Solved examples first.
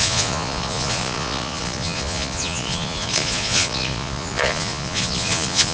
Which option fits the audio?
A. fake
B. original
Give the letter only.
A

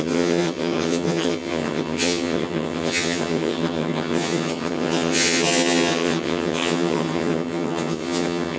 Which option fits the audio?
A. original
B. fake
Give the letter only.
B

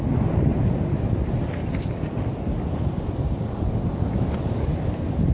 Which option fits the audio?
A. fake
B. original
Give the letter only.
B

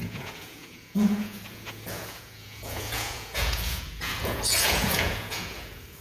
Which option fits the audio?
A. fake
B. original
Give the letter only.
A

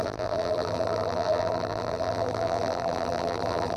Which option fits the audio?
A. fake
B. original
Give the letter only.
A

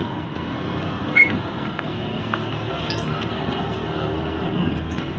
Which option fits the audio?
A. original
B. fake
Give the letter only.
B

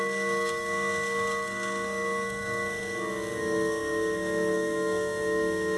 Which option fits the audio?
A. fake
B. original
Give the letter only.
A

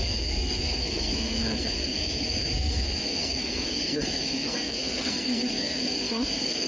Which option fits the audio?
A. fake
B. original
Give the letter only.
A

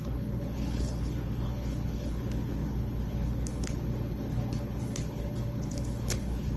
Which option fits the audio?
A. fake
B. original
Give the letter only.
A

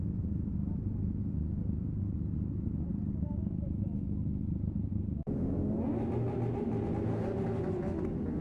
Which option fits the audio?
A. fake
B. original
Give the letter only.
B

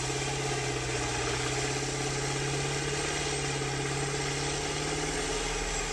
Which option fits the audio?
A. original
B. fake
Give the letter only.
A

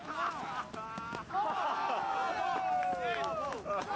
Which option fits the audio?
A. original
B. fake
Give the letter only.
A